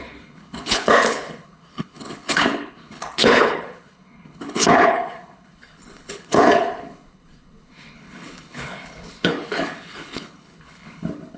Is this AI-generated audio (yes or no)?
yes